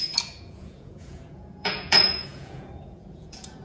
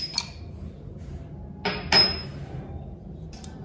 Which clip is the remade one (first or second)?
first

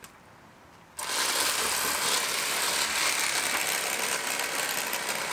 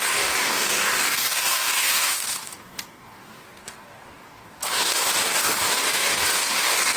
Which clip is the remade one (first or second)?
second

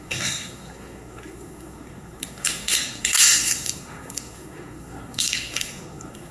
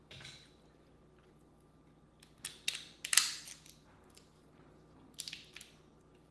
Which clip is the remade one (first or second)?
first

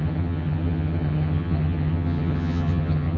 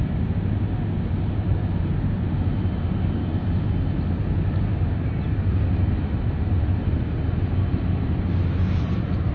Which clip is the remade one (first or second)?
first